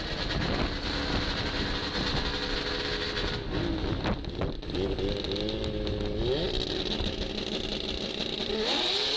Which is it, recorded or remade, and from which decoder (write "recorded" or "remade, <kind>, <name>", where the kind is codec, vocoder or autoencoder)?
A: recorded